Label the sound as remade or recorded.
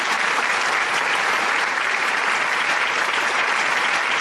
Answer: remade